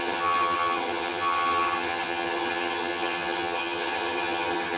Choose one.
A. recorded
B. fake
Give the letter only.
B